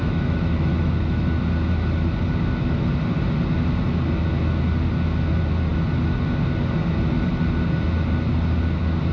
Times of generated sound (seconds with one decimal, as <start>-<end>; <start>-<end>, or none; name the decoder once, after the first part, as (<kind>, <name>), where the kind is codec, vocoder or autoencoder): 0.0-1.2 (autoencoder, DAC-VAE)